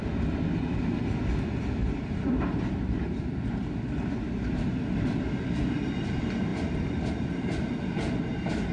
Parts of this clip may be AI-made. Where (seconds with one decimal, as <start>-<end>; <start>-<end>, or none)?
1.8-3.7; 6.5-7.1